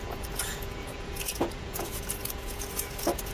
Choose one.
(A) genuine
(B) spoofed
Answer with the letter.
B